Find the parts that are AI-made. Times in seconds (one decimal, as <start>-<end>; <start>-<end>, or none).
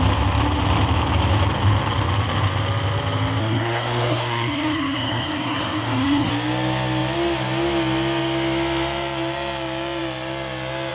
3.4-6.3